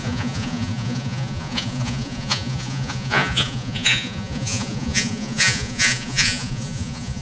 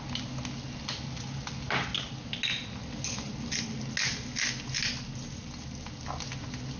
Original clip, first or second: second